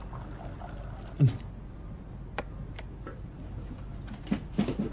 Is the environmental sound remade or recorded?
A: recorded